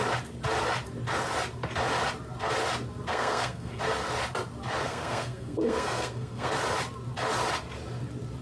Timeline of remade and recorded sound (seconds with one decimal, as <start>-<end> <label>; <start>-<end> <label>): 0.0-3.1 recorded; 3.1-3.8 remade; 3.8-4.8 recorded; 4.8-6.5 remade; 6.5-8.4 recorded